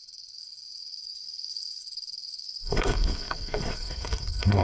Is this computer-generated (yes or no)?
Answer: yes